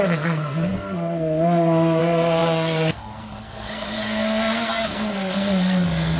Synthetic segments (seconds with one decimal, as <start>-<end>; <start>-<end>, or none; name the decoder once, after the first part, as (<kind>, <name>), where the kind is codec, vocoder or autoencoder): 0.0-6.2 (codec, SNAC)